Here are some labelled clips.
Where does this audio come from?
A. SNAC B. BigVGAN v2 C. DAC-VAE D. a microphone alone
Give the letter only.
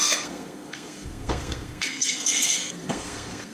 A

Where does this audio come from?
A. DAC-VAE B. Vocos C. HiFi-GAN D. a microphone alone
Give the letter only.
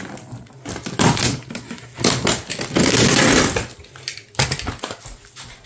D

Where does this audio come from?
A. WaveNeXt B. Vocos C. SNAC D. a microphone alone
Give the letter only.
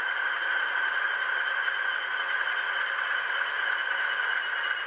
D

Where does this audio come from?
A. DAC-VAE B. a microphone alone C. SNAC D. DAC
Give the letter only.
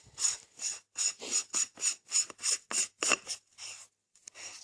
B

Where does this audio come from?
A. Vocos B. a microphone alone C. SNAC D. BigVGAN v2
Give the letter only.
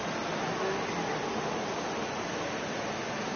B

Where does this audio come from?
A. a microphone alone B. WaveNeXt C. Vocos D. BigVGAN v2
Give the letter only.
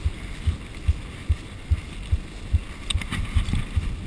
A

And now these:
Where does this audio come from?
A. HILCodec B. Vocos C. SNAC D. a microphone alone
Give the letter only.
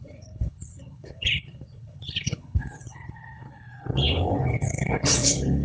A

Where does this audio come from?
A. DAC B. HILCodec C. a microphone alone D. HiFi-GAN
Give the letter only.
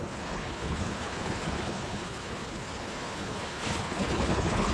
B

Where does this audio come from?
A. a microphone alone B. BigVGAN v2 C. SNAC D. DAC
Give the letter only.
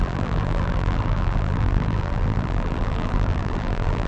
B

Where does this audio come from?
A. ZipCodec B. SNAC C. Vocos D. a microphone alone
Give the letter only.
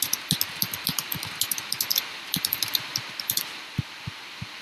D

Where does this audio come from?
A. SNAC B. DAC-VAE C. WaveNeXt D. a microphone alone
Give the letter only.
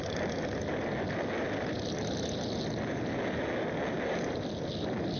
D